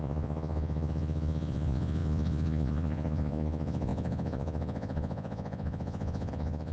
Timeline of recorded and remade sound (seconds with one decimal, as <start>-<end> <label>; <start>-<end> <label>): 0.0-6.7 remade